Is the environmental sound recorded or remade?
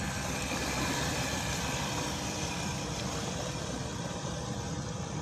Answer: remade